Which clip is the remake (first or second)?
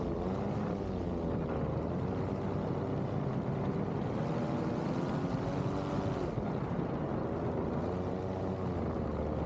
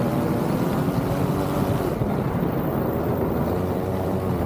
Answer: second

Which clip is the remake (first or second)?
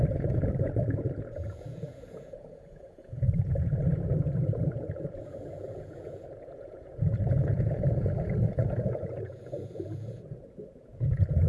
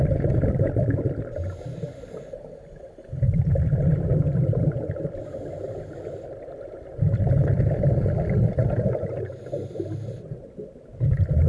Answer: first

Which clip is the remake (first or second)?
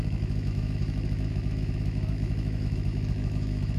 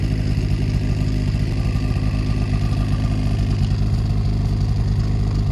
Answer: first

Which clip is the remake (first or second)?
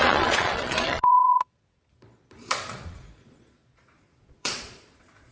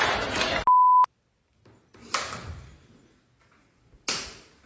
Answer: first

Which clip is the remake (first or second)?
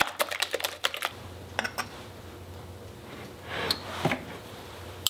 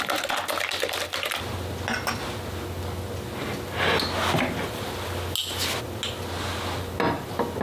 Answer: first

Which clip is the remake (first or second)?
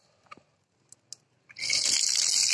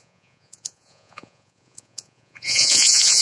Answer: second